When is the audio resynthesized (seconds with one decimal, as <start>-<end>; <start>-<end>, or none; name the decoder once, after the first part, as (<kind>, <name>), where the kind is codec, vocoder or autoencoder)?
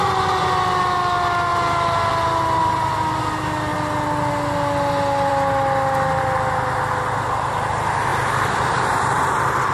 1.5-3.2 (vocoder, BigVGAN v2); 8.1-9.7